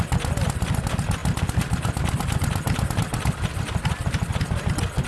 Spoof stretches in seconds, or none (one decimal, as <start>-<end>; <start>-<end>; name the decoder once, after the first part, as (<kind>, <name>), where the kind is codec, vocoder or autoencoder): none